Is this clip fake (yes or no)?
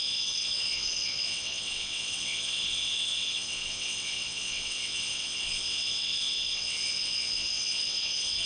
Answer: yes